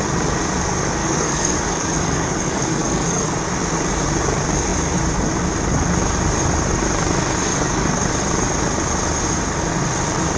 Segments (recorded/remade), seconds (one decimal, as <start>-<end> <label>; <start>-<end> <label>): 0.0-1.0 recorded; 1.0-3.3 remade; 3.3-7.5 recorded; 7.5-8.1 remade; 8.1-10.4 recorded